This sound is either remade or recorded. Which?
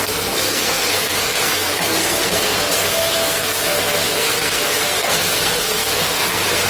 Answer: remade